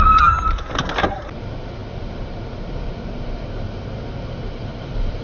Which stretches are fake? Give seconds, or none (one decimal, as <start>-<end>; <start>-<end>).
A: none